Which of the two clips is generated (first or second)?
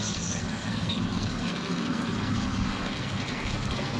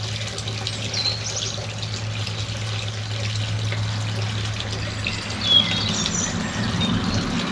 first